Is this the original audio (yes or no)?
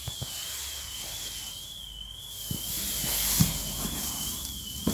yes